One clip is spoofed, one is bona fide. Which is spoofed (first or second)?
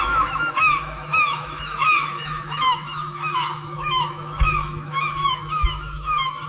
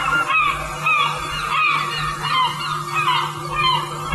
first